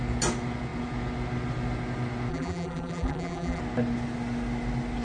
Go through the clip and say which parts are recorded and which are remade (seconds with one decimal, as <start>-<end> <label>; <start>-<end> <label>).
0.0-2.3 recorded; 2.3-3.6 remade; 3.6-5.0 recorded